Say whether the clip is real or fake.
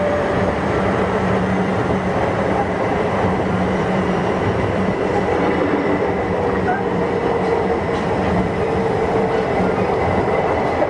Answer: fake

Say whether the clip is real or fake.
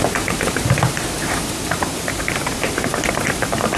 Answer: fake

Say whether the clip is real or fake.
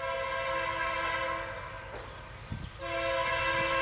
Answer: real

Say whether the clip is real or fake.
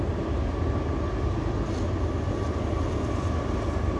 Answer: real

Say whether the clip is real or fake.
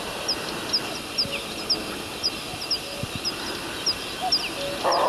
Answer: real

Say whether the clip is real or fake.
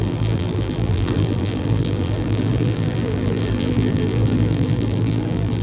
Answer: fake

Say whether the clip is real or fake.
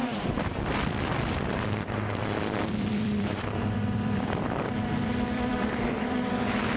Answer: fake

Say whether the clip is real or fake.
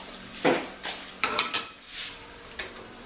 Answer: fake